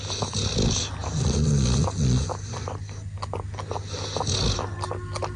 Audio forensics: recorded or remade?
recorded